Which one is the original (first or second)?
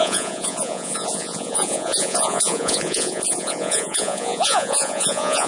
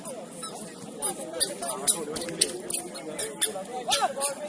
second